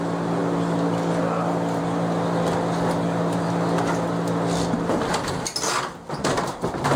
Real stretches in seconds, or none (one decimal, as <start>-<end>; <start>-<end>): 0.0-7.0